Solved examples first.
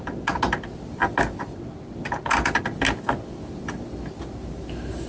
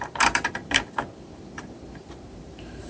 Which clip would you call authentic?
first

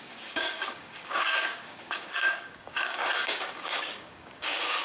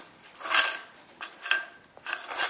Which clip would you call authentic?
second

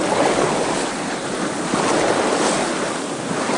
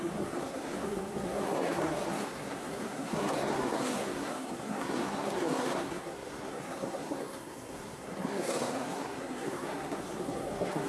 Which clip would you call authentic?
first